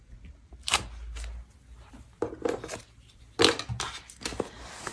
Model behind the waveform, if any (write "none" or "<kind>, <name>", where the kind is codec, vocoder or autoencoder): none